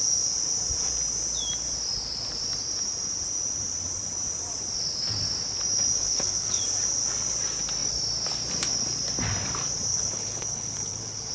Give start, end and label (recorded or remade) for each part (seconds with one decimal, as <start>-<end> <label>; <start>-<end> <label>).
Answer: 0.0-6.0 recorded; 6.0-6.6 remade; 6.6-9.9 recorded; 9.9-11.3 remade